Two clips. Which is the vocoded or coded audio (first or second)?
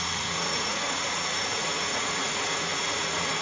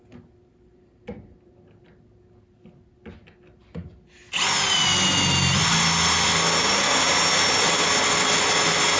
first